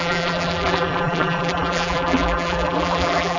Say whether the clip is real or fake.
fake